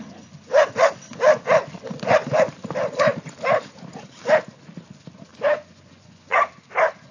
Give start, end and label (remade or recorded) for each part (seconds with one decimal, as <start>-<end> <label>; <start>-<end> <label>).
0.0-5.3 recorded; 5.3-6.5 remade; 6.5-7.1 recorded